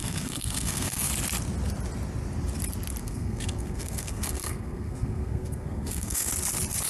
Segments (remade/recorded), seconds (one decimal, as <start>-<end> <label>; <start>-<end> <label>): 0.0-1.1 remade; 1.1-3.0 recorded; 3.0-6.3 remade; 6.3-6.9 recorded